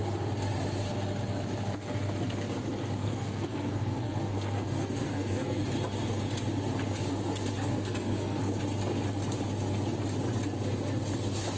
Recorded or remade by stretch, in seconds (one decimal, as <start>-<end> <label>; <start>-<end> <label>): 0.0-3.0 recorded; 3.0-5.6 remade; 5.6-7.1 recorded; 7.1-8.4 remade; 8.4-11.6 recorded